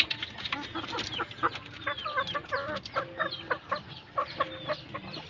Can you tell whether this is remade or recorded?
recorded